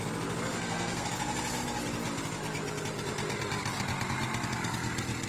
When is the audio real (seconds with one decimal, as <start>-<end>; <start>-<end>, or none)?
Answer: 0.0-0.5; 1.1-5.3